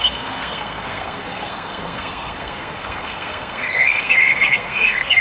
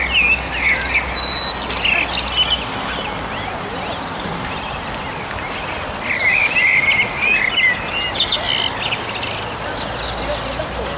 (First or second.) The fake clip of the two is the first